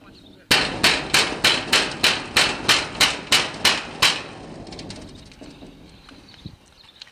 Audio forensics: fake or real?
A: real